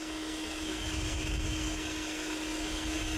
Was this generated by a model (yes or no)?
yes